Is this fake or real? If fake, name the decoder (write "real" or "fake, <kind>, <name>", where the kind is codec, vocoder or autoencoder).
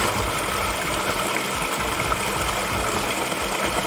real